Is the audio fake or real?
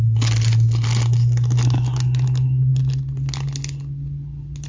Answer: real